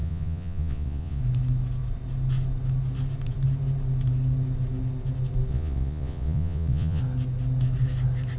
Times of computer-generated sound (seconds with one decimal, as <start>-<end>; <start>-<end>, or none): 0.0-1.2; 5.5-7.0